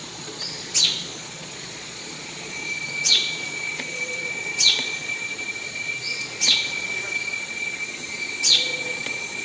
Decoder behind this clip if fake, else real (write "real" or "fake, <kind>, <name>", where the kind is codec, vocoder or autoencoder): fake, vocoder, Vocos